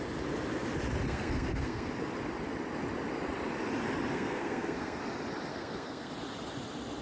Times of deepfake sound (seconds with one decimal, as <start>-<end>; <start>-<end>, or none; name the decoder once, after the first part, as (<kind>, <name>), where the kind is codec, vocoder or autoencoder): 1.1-1.9 (codec, SNAC); 4.1-5.0; 5.5-6.1